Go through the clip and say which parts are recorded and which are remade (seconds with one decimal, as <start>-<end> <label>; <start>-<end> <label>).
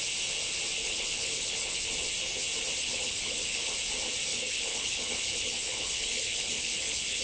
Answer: 0.0-0.8 recorded; 0.8-1.8 remade; 1.8-2.8 recorded; 2.8-3.7 remade; 3.7-4.3 recorded; 4.3-7.2 remade